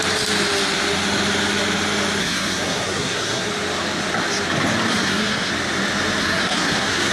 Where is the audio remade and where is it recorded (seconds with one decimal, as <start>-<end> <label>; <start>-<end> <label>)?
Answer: 0.0-2.2 recorded; 2.2-3.5 remade; 3.5-4.9 recorded; 4.9-5.5 remade; 5.5-6.2 recorded; 6.2-7.1 remade